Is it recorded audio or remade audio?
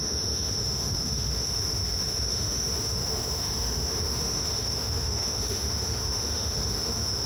remade